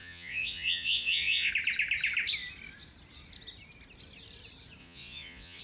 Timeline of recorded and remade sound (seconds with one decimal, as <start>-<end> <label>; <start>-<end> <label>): 0.0-1.5 remade; 1.5-4.8 recorded; 4.8-5.6 remade